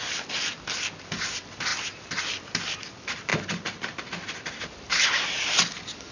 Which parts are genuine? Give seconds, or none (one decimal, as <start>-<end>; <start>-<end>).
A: 1.7-2.2